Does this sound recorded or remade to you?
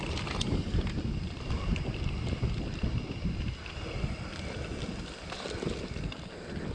recorded